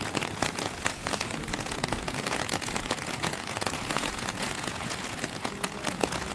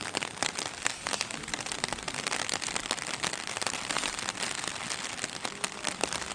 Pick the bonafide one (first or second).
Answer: second